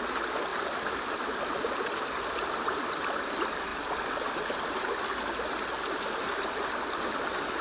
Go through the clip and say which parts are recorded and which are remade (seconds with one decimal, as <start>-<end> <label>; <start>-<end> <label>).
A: 0.0-0.5 recorded; 0.5-3.1 remade; 3.1-7.6 recorded